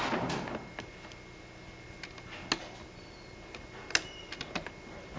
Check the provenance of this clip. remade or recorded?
recorded